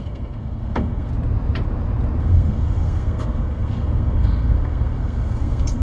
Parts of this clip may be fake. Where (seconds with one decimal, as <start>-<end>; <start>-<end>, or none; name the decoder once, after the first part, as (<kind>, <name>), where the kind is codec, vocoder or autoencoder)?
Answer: 0.0-1.1 (codec, SNAC); 2.2-5.8